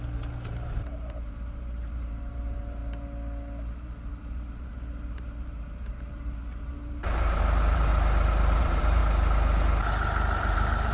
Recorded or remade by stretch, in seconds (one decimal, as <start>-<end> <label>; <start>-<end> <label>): 0.0-2.8 remade; 2.8-4.1 recorded; 4.1-7.9 remade; 7.9-8.6 recorded; 8.6-9.0 remade; 9.0-10.4 recorded; 10.4-10.9 remade